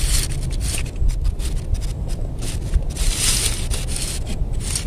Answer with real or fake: real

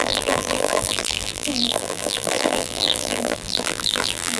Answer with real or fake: fake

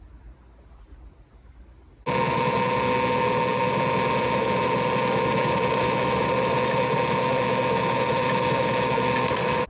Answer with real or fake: real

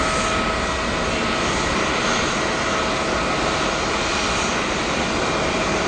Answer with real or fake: real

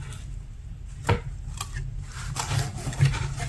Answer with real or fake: real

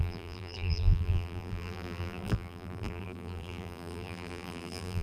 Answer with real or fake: fake